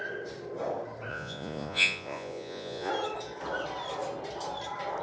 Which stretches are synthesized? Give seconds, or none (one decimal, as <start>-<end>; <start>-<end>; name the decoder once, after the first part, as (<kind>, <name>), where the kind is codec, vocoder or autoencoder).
1.1-2.9 (vocoder, Vocos)